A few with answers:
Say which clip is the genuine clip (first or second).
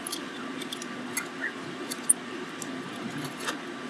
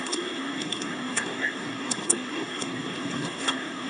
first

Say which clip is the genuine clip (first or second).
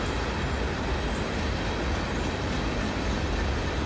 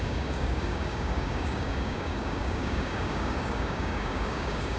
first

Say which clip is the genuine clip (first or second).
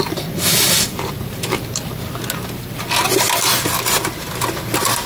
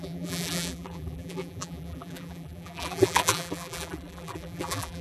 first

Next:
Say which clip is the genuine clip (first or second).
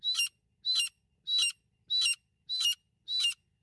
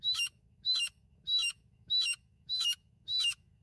first